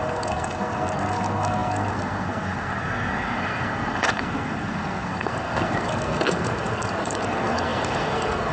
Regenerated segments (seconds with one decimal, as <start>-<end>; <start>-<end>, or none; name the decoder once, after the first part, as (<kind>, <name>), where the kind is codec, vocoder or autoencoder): 0.0-8.5 (codec, SNAC)